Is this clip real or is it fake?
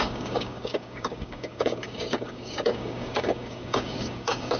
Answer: fake